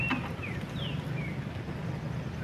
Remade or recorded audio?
recorded